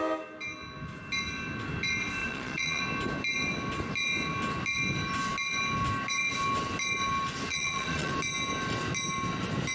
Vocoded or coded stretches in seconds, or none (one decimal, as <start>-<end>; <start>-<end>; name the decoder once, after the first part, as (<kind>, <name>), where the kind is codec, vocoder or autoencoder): 2.2-2.8 (vocoder, Vocos); 7.5-8.1

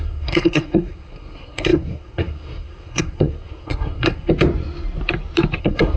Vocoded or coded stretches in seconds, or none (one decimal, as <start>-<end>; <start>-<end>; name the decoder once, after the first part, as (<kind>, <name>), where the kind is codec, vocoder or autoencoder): 0.0-4.3 (codec, SNAC); 5.6-6.0

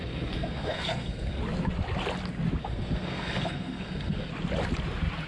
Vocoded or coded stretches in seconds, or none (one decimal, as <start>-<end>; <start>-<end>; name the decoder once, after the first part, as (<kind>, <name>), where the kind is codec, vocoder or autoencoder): 0.0-1.4 (codec, SNAC); 2.6-4.3

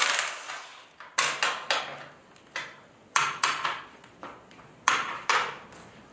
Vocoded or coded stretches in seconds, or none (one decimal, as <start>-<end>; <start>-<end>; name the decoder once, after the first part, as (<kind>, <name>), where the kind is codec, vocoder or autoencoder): 3.0-5.3 (vocoder, Vocos)

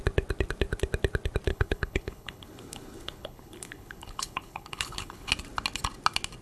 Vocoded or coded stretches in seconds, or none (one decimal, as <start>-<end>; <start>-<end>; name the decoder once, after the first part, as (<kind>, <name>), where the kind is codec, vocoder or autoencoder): 1.5-5.3 (codec, HILCodec)

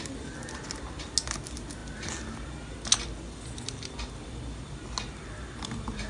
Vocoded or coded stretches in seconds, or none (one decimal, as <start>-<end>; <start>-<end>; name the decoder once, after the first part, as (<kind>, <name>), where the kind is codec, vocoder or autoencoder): none

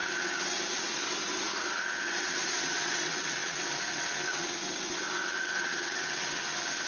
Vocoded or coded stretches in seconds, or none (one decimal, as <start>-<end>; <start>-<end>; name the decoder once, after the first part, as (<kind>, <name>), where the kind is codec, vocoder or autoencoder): 0.0-6.9 (vocoder, WaveNeXt)